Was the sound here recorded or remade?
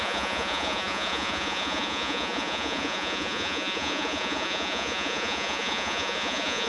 remade